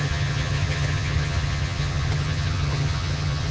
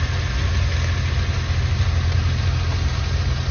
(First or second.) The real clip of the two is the second